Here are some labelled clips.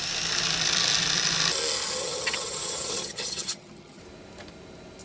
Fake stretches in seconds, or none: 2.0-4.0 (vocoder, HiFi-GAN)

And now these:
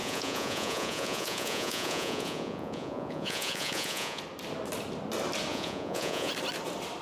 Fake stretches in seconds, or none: 0.0-4.2 (vocoder, Vocos); 5.5-6.3

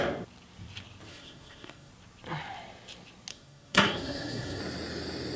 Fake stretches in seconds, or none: 1.1-1.9 (codec, SNAC); 3.3-4.6